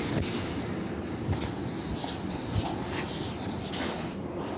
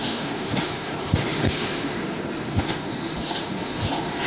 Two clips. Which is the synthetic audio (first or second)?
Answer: second